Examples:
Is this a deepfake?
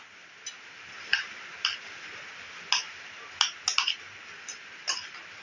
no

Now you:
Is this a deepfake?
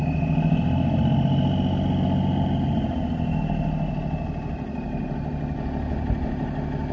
no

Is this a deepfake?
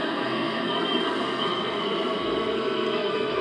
yes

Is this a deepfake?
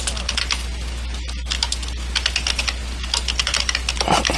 no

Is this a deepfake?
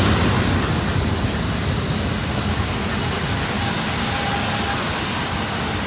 no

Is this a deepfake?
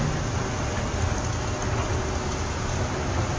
no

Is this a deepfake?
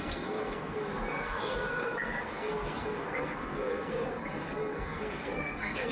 yes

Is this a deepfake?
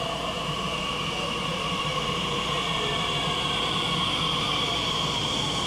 yes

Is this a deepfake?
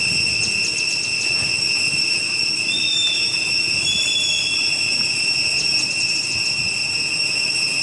no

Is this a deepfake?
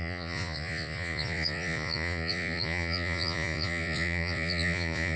yes